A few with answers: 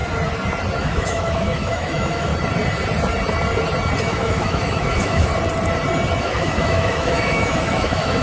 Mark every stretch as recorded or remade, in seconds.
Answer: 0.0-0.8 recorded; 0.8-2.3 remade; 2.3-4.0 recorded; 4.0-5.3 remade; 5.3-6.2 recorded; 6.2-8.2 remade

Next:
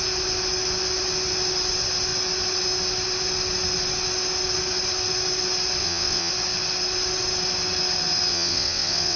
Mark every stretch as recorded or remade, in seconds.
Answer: 0.0-5.8 recorded; 5.8-6.3 remade; 6.3-8.3 recorded; 8.3-9.2 remade